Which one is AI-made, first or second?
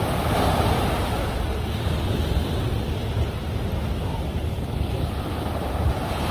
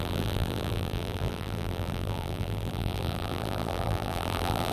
second